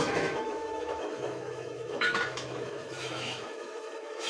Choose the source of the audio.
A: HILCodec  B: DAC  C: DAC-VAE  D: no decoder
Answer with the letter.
C